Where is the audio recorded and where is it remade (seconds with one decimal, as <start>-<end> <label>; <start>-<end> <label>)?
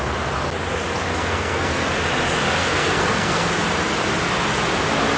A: 0.0-1.1 recorded; 1.1-1.9 remade; 1.9-2.6 recorded; 2.6-3.5 remade; 3.5-5.2 recorded